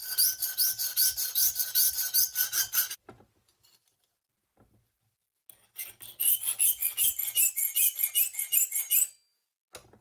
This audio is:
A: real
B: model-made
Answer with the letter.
A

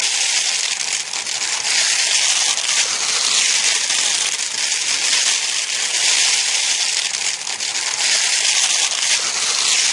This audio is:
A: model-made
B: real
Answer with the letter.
B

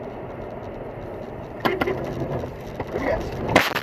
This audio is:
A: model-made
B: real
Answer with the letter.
A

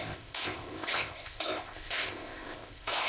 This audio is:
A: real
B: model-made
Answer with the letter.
B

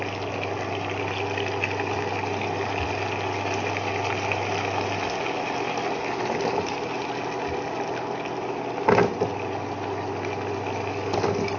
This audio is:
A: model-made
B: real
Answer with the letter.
B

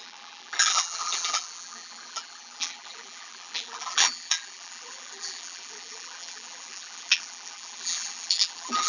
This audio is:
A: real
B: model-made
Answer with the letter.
B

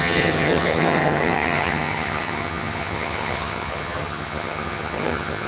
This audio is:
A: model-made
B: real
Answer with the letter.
A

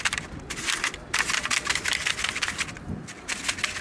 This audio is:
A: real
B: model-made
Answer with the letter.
A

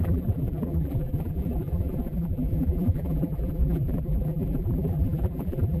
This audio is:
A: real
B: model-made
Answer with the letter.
B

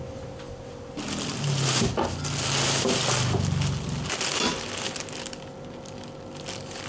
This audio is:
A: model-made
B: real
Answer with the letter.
B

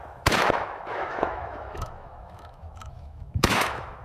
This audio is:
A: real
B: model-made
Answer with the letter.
B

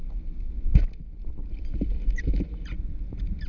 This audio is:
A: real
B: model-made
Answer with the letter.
A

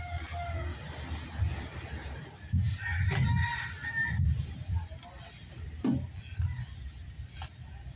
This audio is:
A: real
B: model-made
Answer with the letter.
A